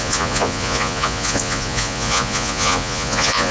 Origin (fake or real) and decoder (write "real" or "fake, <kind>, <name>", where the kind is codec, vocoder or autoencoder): fake, vocoder, Vocos